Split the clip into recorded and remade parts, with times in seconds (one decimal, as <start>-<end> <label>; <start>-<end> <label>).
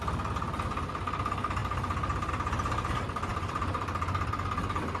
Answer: 0.0-3.3 recorded; 3.3-4.3 remade; 4.3-5.0 recorded